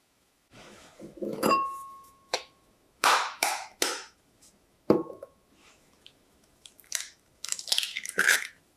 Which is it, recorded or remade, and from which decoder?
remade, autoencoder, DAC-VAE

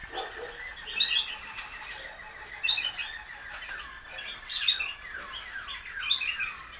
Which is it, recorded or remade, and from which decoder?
recorded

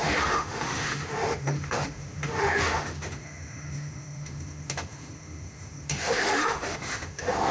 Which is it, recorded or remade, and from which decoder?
remade, autoencoder, DAC-VAE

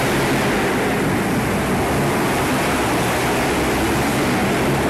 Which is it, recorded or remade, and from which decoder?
recorded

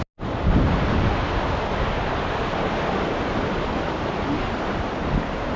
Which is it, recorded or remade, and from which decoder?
recorded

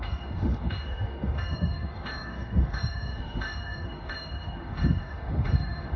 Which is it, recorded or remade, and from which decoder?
remade, autoencoder, DAC-VAE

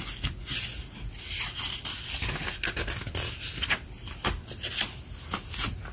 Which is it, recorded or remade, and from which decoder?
recorded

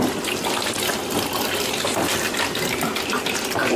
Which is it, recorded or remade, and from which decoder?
recorded